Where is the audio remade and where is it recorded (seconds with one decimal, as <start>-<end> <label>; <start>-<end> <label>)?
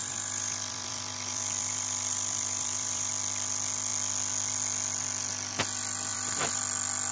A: 0.0-3.1 remade; 3.1-6.1 recorded; 6.1-6.6 remade; 6.6-7.1 recorded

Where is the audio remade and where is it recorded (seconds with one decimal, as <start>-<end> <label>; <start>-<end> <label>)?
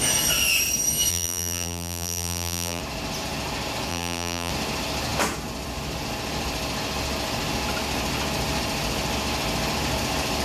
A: 0.0-1.1 recorded; 1.1-2.8 remade; 2.8-3.9 recorded; 3.9-4.5 remade; 4.5-10.4 recorded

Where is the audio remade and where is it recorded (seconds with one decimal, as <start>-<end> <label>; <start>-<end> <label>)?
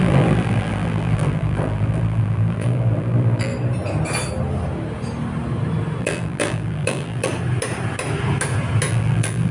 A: 0.0-3.5 remade; 3.5-6.0 recorded; 6.0-7.3 remade; 7.3-8.9 recorded; 8.9-9.5 remade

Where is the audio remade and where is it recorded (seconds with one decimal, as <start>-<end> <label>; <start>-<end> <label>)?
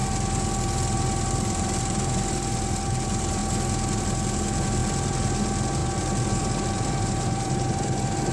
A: 0.0-3.4 remade; 3.4-4.0 recorded; 4.0-8.3 remade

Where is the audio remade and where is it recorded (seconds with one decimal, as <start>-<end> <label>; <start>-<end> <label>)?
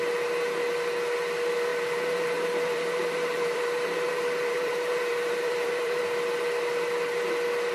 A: 0.0-1.7 recorded; 1.7-6.0 remade; 6.0-7.7 recorded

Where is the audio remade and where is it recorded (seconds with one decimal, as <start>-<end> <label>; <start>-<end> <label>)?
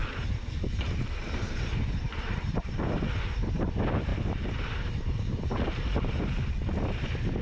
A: 0.0-2.8 remade; 2.8-4.1 recorded; 4.1-6.5 remade; 6.5-7.4 recorded